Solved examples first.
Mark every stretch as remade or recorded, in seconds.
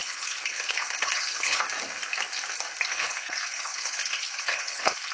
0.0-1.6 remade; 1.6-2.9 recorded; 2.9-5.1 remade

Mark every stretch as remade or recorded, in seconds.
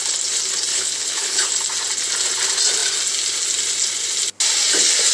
0.0-0.7 recorded; 0.7-1.5 remade; 1.5-5.1 recorded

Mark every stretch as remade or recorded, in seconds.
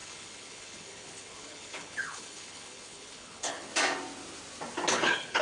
0.0-3.7 remade; 3.7-4.9 recorded; 4.9-5.4 remade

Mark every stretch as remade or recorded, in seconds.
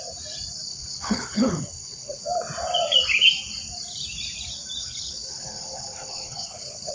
0.0-0.7 recorded; 0.7-2.2 remade; 2.2-4.8 recorded; 4.8-6.9 remade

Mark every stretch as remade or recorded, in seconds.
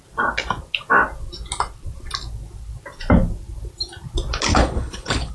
0.0-4.5 recorded; 4.5-5.3 remade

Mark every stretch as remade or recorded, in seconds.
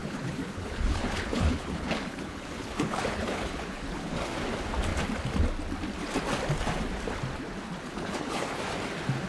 0.0-4.2 remade; 4.2-7.9 recorded; 7.9-8.6 remade; 8.6-9.3 recorded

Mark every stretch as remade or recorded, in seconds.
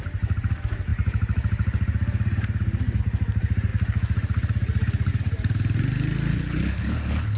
0.0-6.3 recorded; 6.3-7.4 remade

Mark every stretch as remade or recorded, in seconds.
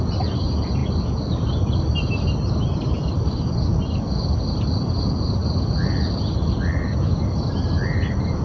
0.0-8.4 recorded